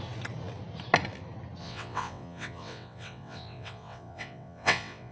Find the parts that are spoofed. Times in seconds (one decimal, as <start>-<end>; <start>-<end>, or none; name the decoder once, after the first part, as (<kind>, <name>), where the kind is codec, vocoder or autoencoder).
1.6-5.1 (vocoder, WaveNeXt)